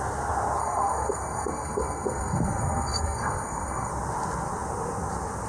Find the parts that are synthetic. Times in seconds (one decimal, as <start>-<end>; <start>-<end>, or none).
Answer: 0.6-3.9